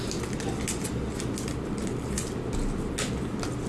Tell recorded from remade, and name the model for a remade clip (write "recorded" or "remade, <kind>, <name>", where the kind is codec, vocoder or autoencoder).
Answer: recorded